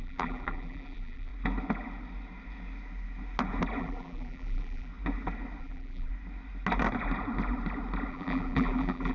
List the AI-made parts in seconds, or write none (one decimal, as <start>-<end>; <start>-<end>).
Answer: 0.0-1.3; 3.8-4.9; 5.6-6.1; 8.1-9.1